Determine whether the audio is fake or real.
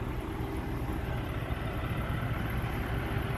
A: real